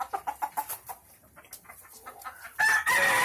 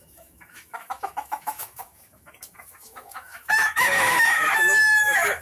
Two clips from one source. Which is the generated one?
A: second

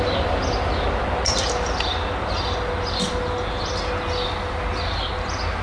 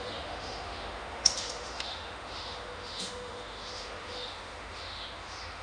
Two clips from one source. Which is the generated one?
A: second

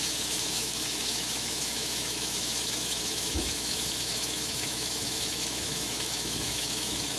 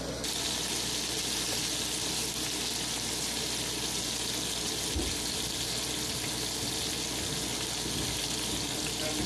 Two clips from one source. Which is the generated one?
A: first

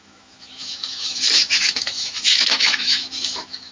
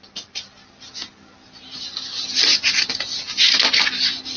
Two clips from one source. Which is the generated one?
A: first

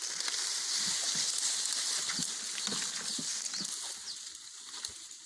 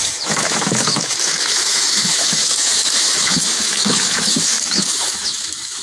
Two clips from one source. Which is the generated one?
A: second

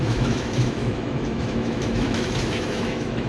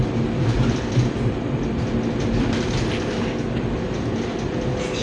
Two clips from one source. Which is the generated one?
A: first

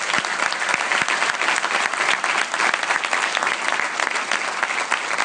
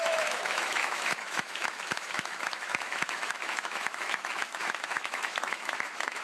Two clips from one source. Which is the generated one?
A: second